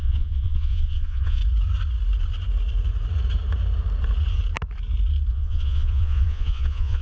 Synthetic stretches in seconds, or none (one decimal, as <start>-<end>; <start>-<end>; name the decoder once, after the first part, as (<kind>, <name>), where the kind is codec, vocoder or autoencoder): 0.0-1.4 (vocoder, Vocos); 5.3-7.0